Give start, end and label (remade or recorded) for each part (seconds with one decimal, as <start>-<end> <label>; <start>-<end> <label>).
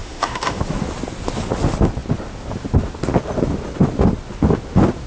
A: 0.0-0.6 remade; 0.6-5.1 recorded